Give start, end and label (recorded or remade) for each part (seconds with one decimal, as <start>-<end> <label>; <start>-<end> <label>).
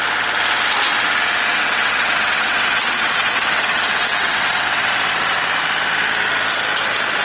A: 0.0-1.5 recorded; 1.5-4.9 remade; 4.9-7.2 recorded